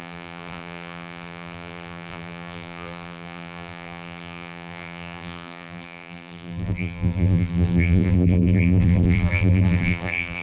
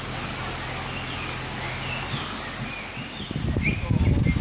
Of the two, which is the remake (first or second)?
first